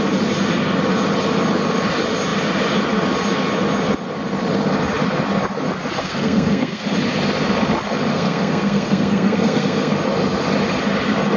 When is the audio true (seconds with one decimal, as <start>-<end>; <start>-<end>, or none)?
0.0-6.0; 6.8-8.1; 9.9-11.4